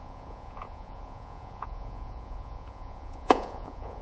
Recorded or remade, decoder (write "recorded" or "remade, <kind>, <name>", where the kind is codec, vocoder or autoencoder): remade, vocoder, Vocos